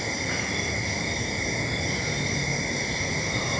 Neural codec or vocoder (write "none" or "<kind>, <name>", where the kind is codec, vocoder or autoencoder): none